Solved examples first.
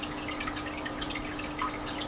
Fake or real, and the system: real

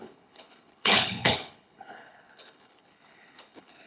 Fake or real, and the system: fake, codec, HILCodec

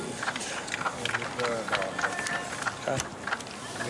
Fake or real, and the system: real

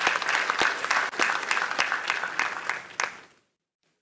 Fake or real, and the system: real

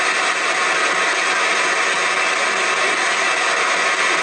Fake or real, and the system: real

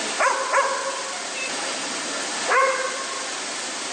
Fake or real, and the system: real